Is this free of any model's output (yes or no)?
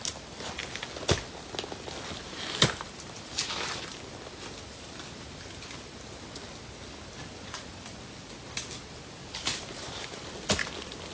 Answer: yes